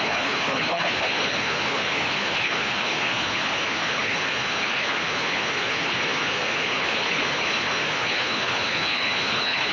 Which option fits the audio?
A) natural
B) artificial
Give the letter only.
B